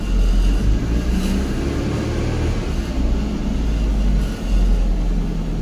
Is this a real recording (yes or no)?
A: yes